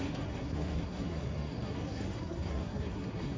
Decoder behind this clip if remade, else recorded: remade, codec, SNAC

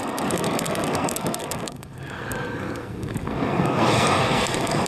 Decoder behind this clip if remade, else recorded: remade, codec, SNAC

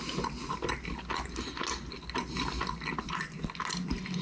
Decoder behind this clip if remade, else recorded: recorded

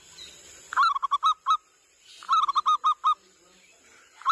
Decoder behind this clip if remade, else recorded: recorded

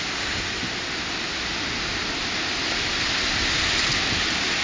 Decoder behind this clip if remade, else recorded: recorded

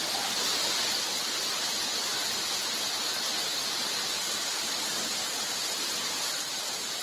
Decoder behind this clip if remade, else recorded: recorded